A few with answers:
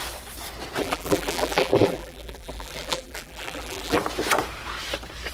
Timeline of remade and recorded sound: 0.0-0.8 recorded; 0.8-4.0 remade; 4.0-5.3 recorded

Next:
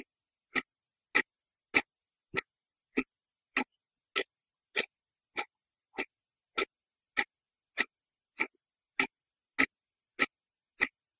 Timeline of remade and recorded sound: 0.0-11.2 recorded

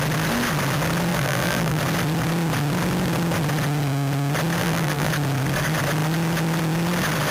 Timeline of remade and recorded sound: 0.0-1.1 recorded; 1.1-1.8 remade; 1.8-4.6 recorded; 4.6-5.1 remade; 5.1-7.3 recorded